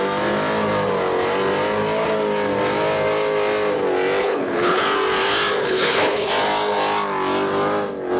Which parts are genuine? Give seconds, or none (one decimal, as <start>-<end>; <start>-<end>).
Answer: 0.0-4.2; 4.8-5.6; 6.3-8.2